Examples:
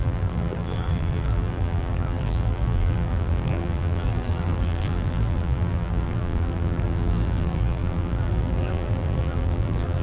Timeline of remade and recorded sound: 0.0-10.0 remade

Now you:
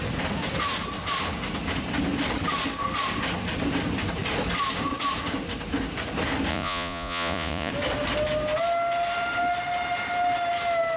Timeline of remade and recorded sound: 0.0-6.5 recorded; 6.5-7.7 remade; 7.7-11.0 recorded

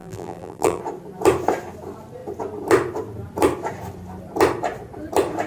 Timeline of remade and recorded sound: 0.0-0.8 remade; 0.8-5.5 recorded

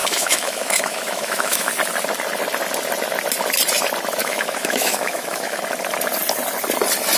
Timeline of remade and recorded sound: 0.0-1.7 remade; 1.7-4.2 recorded; 4.2-5.6 remade; 5.6-7.2 recorded

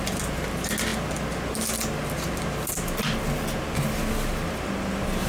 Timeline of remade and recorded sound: 0.0-5.3 recorded

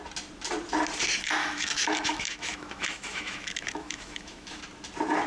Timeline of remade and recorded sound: 0.0-1.4 recorded; 1.4-4.6 remade; 4.6-5.3 recorded